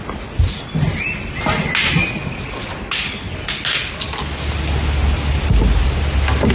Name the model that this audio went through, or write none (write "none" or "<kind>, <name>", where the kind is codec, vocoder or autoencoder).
none